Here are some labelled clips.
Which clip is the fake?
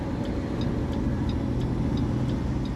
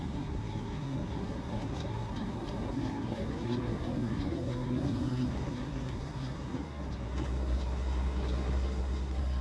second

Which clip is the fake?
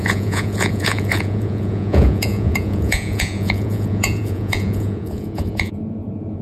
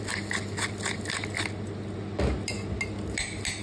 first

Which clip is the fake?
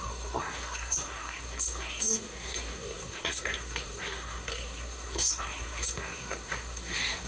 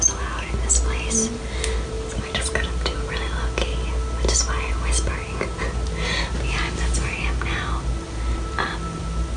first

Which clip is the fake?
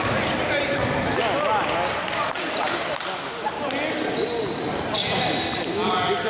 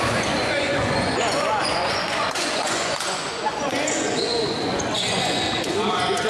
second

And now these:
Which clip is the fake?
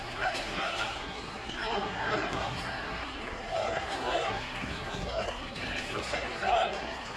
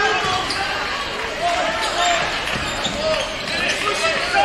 first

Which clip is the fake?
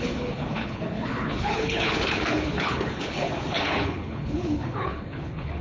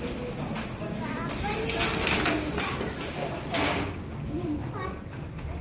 first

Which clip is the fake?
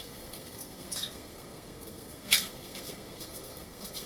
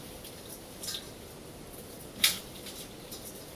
first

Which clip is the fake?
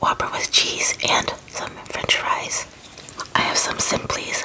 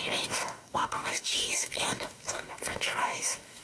second